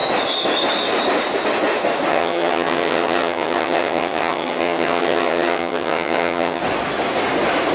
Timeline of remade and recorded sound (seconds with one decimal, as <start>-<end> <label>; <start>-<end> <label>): 0.0-2.1 recorded; 2.1-6.6 remade; 6.6-7.7 recorded